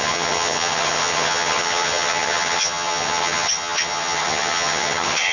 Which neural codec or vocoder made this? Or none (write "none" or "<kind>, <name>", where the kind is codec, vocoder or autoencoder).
vocoder, HiFi-GAN